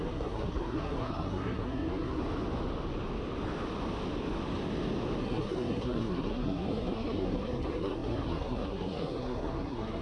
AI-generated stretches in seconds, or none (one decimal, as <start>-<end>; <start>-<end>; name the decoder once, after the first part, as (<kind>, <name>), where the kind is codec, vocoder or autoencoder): 0.0-2.2 (codec, SNAC); 5.2-10.0